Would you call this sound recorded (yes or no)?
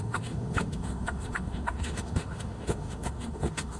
no